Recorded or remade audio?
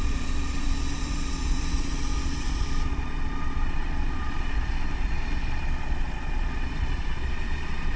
remade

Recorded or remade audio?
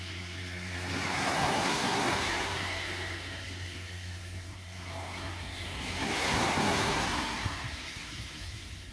remade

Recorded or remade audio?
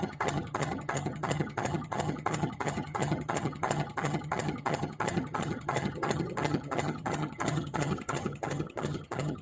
remade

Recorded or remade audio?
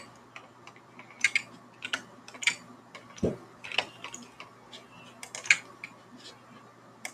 recorded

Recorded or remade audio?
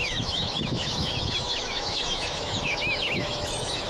remade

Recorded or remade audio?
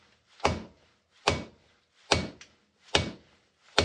recorded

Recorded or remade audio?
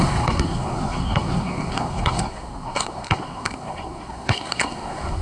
remade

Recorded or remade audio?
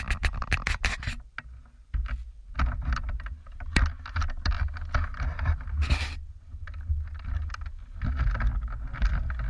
recorded